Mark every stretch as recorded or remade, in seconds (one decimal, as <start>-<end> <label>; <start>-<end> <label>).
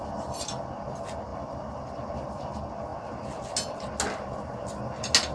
0.0-1.3 recorded; 1.3-2.5 remade; 2.5-5.3 recorded